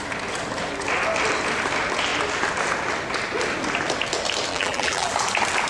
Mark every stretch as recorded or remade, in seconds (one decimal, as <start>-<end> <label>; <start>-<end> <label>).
0.0-4.5 recorded; 4.5-5.1 remade; 5.1-5.7 recorded